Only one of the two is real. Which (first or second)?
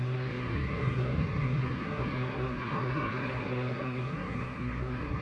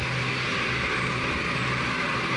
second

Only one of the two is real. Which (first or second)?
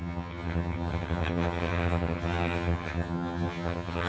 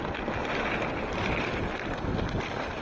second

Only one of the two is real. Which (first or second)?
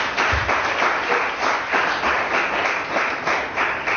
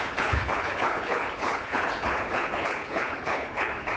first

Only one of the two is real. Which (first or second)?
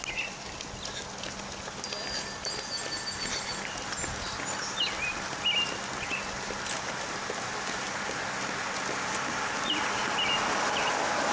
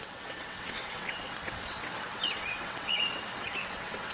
first